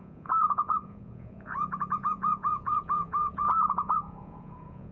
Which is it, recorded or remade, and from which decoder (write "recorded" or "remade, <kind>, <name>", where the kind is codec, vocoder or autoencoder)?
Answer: remade, vocoder, Vocos